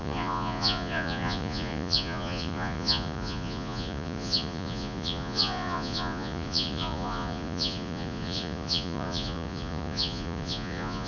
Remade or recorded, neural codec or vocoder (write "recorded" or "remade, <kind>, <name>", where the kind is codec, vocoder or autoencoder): remade, vocoder, Vocos